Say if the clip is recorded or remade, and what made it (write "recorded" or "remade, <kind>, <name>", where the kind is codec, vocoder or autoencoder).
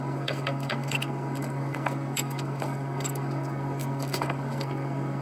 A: remade, codec, SNAC